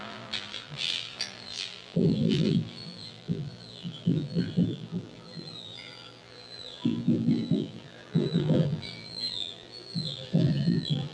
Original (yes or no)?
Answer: no